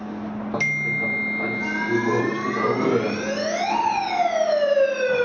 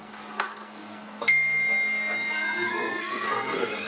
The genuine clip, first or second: first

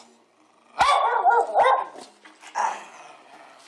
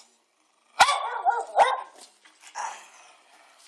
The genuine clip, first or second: first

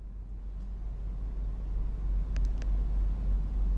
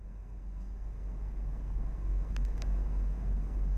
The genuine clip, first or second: first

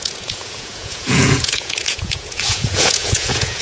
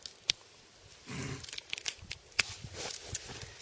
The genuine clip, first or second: second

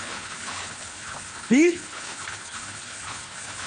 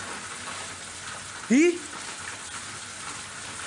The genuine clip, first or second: second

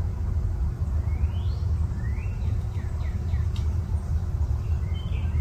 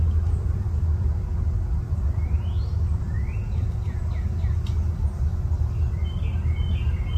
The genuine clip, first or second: second